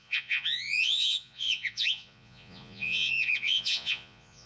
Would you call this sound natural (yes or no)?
no